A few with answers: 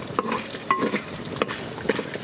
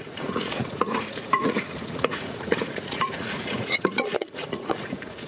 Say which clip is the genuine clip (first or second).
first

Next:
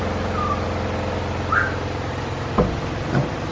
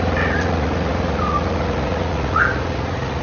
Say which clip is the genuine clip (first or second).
first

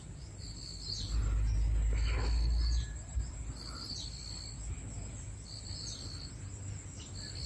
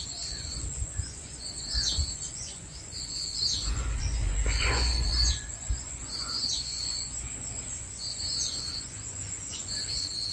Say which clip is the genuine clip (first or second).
first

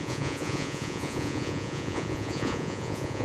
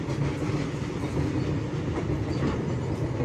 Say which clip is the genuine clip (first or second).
second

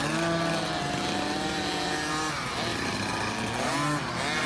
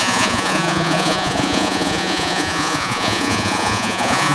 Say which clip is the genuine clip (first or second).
first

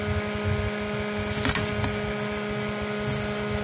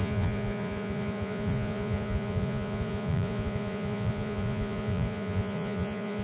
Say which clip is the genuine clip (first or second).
first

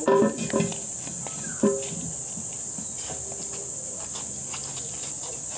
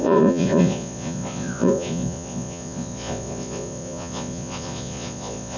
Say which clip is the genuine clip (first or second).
first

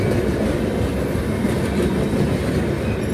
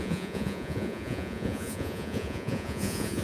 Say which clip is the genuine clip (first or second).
first